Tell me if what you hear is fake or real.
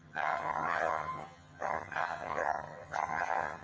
fake